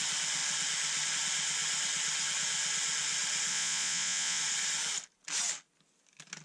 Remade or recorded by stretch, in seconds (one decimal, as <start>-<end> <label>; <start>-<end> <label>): 0.0-3.5 recorded; 3.5-4.4 remade; 4.4-6.4 recorded